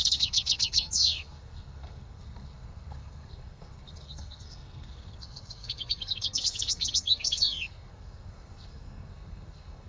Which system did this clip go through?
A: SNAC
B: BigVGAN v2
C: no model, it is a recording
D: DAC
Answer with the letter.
A